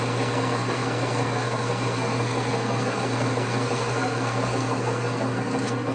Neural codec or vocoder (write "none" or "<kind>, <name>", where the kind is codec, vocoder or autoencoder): codec, SNAC